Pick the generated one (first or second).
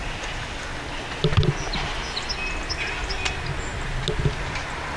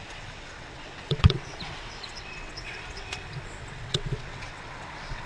second